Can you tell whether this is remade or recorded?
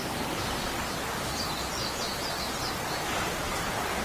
recorded